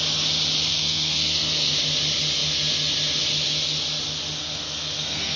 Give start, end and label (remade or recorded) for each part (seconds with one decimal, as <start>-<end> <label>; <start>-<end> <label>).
0.0-0.7 recorded; 0.7-1.7 remade; 1.7-4.4 recorded; 4.4-5.4 remade